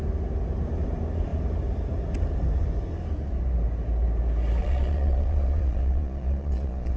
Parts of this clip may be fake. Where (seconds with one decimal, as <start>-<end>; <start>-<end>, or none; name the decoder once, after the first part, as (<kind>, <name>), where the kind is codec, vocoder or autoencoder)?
4.6-7.0 (vocoder, Vocos)

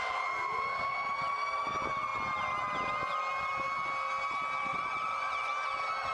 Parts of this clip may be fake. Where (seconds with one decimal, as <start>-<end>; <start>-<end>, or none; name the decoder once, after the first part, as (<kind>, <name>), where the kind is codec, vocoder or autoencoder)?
4.7-5.5 (vocoder, Vocos)

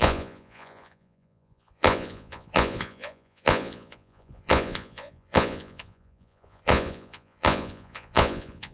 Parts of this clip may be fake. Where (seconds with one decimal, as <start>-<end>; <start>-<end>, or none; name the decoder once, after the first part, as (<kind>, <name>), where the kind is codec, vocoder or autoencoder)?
0.0-8.7 (vocoder, Vocos)

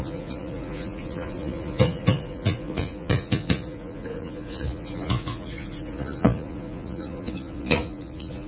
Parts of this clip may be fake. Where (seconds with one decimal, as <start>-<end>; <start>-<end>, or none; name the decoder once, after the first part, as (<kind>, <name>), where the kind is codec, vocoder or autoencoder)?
0.0-8.5 (vocoder, Vocos)

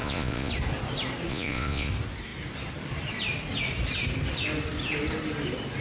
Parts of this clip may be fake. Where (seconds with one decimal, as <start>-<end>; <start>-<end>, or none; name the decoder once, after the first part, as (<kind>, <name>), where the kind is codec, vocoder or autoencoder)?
0.0-0.5 (vocoder, Vocos); 1.3-1.9